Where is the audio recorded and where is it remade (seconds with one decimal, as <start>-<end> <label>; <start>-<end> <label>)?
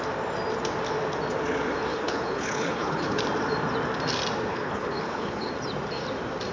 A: 0.0-1.9 recorded; 1.9-3.2 remade; 3.2-4.5 recorded; 4.5-5.5 remade; 5.5-6.5 recorded